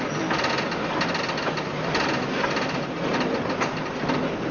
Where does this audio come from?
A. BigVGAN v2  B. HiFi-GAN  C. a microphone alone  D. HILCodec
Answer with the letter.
C